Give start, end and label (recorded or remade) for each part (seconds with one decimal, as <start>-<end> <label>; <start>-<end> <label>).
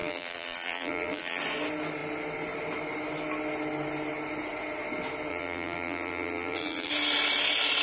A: 0.0-1.4 remade; 1.4-5.3 recorded; 5.3-6.9 remade; 6.9-7.8 recorded